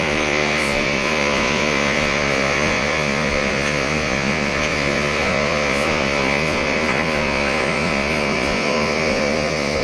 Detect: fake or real fake